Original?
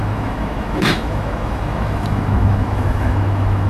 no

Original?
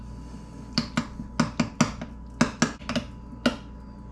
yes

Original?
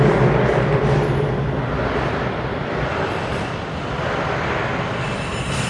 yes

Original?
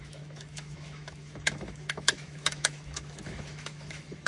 no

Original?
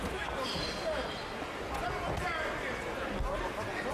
yes